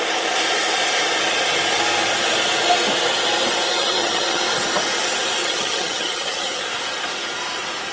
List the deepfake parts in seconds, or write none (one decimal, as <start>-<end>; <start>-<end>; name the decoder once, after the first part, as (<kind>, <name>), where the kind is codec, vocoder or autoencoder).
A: 3.7-4.4 (vocoder, HiFi-GAN); 5.4-6.6